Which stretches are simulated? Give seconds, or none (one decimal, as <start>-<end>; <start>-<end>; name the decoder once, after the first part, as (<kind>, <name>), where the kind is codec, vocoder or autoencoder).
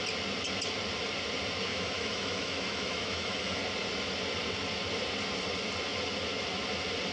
1.7-3.6 (autoencoder, DAC-VAE)